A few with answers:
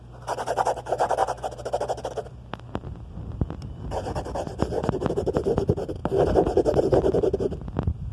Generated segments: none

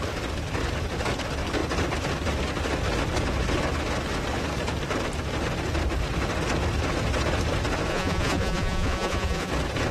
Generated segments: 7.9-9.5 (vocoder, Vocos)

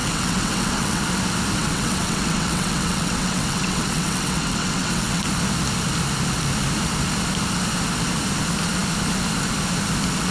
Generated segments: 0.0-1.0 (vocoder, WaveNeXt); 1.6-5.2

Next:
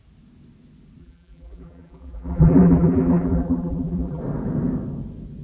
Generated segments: 1.0-4.2 (vocoder, BigVGAN v2)

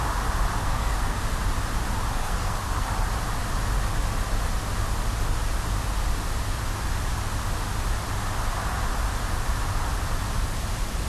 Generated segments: 0.6-1.2 (codec, SNAC); 2.2-2.9

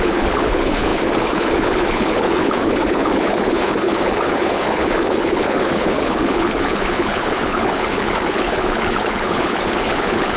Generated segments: 0.0-10.4 (codec, HILCodec)